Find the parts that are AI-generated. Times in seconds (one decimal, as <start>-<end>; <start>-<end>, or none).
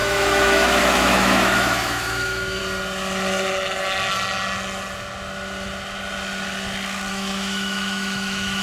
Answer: 0.0-2.6; 7.1-8.6